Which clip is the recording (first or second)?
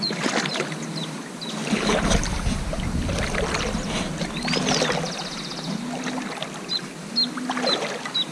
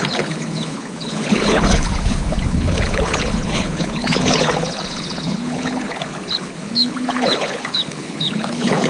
first